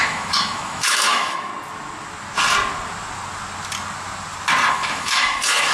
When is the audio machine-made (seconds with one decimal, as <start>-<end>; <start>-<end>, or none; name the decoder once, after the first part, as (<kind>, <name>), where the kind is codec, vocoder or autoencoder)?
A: 0.0-1.5 (autoencoder, DAC-VAE); 4.7-5.7